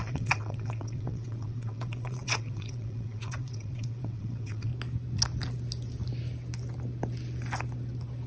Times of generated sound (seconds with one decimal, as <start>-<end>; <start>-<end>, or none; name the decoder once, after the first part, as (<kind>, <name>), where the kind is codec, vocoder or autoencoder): 0.0-4.7 (vocoder, WaveNeXt)